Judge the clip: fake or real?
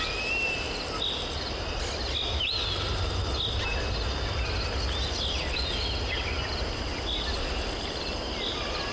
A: real